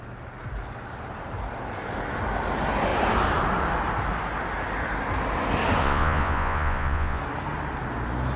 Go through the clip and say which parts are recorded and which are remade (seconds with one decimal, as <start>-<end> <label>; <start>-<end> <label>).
0.0-5.8 recorded; 5.8-7.2 remade; 7.2-8.4 recorded